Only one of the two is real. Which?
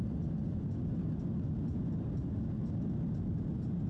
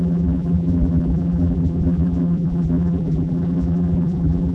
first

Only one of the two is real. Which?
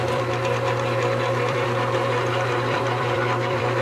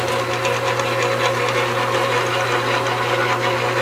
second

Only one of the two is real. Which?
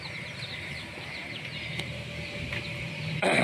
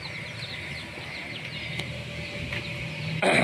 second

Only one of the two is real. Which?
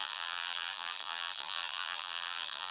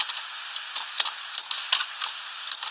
second